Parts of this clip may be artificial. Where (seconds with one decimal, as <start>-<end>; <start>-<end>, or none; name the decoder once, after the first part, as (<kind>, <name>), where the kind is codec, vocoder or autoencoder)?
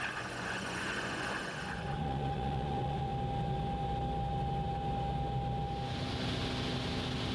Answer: 0.0-3.1 (vocoder, Vocos)